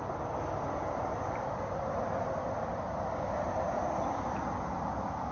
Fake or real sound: real